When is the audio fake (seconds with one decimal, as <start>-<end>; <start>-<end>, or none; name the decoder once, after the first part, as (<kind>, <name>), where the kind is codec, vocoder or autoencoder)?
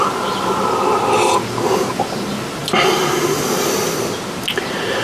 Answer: none